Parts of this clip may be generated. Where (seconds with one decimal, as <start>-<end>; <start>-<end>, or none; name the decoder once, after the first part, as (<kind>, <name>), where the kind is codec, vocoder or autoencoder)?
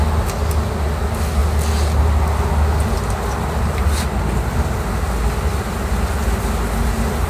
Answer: none